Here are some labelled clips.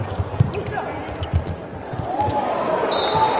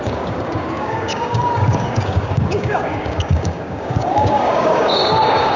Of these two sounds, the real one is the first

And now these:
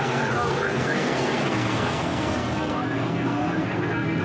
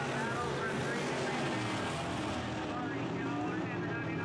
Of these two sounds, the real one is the second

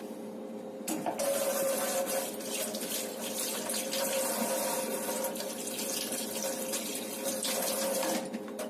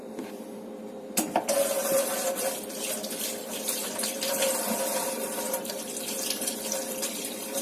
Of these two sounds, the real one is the first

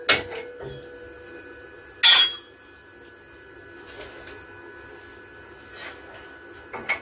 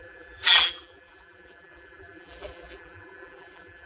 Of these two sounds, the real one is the first